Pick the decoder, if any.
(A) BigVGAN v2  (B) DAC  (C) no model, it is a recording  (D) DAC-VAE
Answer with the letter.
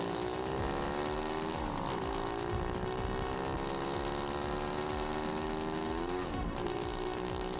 C